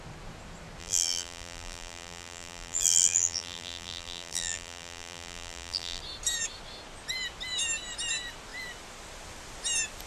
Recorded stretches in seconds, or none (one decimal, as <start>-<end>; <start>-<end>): 0.0-0.8; 6.0-10.1